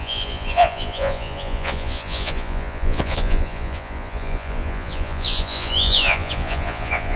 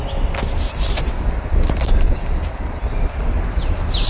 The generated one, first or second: first